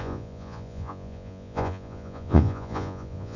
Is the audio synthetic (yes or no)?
yes